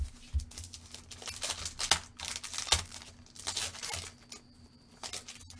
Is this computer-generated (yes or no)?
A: no